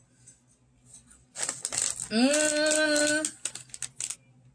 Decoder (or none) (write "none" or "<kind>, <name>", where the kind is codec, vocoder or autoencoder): none